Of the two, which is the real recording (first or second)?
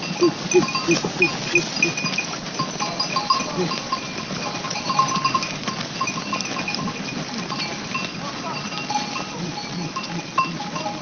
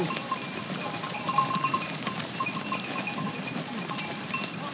first